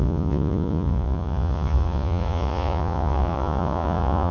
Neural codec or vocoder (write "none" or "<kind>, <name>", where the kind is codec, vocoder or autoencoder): vocoder, Vocos